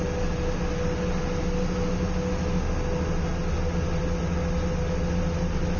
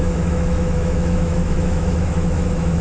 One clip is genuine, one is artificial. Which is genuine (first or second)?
first